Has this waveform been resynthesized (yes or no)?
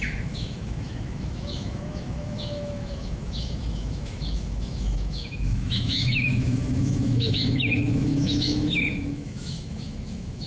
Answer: yes